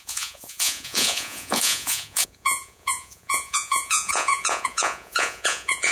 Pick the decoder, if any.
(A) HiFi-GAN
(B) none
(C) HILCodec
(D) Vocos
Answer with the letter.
D